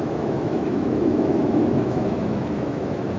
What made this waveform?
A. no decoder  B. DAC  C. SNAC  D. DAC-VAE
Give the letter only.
D